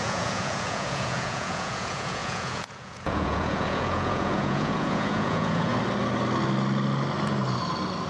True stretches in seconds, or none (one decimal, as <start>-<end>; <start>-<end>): 5.7-8.1